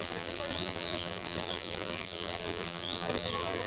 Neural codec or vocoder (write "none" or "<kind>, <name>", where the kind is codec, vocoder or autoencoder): vocoder, BigVGAN v2